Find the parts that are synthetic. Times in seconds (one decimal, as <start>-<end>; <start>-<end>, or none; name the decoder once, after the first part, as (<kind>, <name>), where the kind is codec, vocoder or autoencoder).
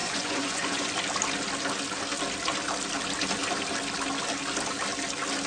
0.0-0.9 (vocoder, Vocos)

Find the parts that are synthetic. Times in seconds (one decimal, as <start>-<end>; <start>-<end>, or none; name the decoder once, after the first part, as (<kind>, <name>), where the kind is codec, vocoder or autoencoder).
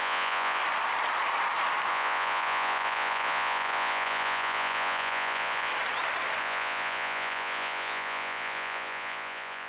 0.0-0.6 (vocoder, Vocos); 1.9-5.7; 6.4-9.7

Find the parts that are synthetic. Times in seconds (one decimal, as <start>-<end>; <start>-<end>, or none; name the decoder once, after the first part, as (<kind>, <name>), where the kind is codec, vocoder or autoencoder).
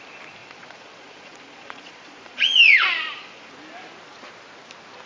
0.4-3.5 (vocoder, Vocos)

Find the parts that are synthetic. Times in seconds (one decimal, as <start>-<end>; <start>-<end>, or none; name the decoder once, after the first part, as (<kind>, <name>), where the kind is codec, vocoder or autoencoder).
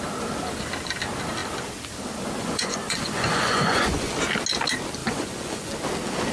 2.4-4.1 (vocoder, Vocos); 5.0-5.7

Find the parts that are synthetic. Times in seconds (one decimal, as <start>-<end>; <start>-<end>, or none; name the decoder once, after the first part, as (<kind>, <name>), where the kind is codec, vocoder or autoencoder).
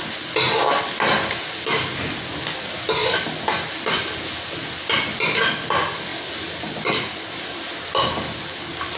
none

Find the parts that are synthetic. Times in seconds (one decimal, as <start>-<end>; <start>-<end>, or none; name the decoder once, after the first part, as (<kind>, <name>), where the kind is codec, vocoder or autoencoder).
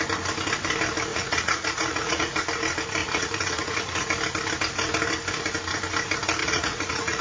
1.1-2.4 (vocoder, Vocos); 3.0-4.1; 6.4-7.2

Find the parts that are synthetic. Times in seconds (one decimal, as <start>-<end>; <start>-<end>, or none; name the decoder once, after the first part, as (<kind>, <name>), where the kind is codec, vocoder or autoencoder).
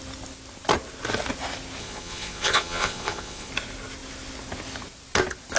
1.8-3.5 (vocoder, Vocos)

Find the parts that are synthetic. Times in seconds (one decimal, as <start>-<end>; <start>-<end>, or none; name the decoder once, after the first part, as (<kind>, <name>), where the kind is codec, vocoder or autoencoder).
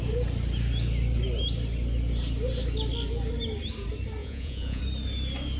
4.2-4.8 (vocoder, Vocos)